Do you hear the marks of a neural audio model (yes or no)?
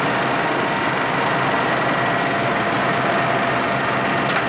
no